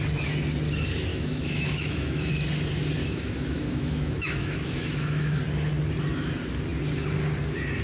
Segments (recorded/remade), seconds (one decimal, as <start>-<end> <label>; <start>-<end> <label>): 0.0-1.1 recorded; 1.1-2.3 remade; 2.3-3.0 recorded; 3.0-5.4 remade; 5.4-7.8 recorded